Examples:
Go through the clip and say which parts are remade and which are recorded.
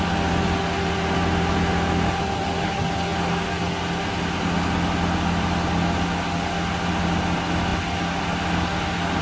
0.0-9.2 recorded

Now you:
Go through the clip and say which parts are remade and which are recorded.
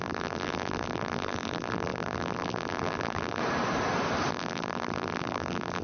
0.0-3.4 remade; 3.4-4.3 recorded; 4.3-5.8 remade